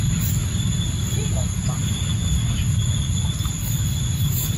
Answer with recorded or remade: recorded